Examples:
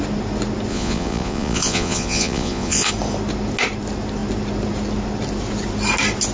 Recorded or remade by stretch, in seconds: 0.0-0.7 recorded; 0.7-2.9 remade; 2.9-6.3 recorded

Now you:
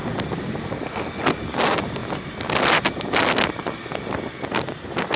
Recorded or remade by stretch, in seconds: 0.0-5.2 recorded

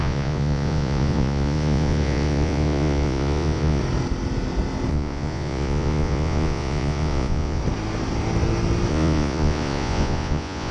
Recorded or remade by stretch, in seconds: 0.0-3.8 remade; 3.8-4.9 recorded; 4.9-7.6 remade; 7.6-8.9 recorded; 8.9-10.7 remade

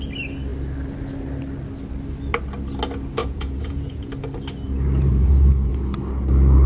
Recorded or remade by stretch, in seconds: 0.0-3.2 recorded; 3.2-4.1 remade; 4.1-5.1 recorded; 5.1-5.7 remade; 5.7-6.7 recorded

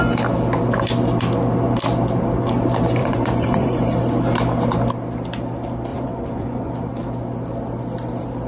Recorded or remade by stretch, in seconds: 0.0-3.0 recorded; 3.0-3.8 remade; 3.8-5.9 recorded; 5.9-6.7 remade; 6.7-8.5 recorded

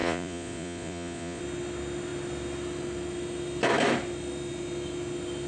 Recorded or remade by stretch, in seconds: 0.0-1.4 remade; 1.4-5.5 recorded

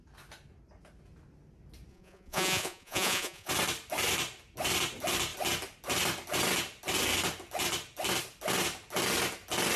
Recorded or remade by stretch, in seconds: 0.0-1.9 recorded; 1.9-3.5 remade; 3.5-9.8 recorded